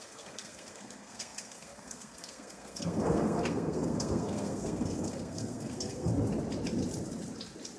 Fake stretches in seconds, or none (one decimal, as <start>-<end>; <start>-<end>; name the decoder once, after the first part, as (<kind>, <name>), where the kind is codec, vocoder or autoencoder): 0.0-6.1 (codec, SNAC)